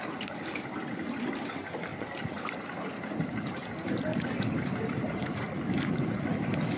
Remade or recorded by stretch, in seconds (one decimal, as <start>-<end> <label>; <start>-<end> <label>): 0.0-1.9 recorded; 1.9-2.5 remade; 2.5-4.1 recorded; 4.1-6.1 remade; 6.1-6.8 recorded

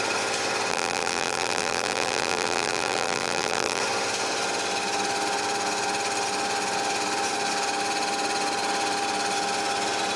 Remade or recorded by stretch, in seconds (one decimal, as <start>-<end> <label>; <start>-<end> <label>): 0.0-0.7 recorded; 0.7-3.8 remade; 3.8-10.2 recorded

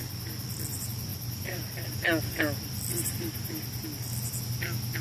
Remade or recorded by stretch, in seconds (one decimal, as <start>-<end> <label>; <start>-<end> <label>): 0.0-1.1 recorded; 1.1-3.6 remade; 3.6-5.0 recorded

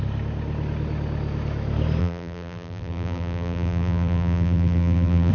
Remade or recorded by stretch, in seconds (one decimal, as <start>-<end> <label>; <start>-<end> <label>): 0.0-2.0 recorded; 2.0-5.3 remade

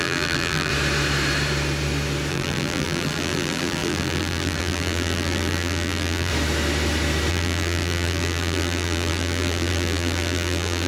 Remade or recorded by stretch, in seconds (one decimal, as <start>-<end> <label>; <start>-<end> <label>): 0.0-0.7 remade; 0.7-2.3 recorded; 2.3-6.3 remade; 6.3-7.3 recorded; 7.3-10.9 remade

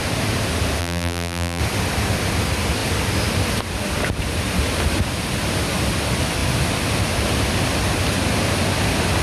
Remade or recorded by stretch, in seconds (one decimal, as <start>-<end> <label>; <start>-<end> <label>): 0.0-0.8 recorded; 0.8-1.6 remade; 1.6-9.2 recorded

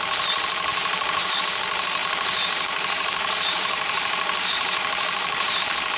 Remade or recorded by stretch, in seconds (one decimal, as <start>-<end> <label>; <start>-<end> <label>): 0.0-0.7 recorded; 0.7-1.4 remade; 1.4-2.0 recorded; 2.0-5.6 remade; 5.6-6.0 recorded

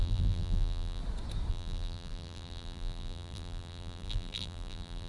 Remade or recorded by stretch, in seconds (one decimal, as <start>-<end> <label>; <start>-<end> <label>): 0.0-1.0 remade; 1.0-1.5 recorded; 1.5-5.1 remade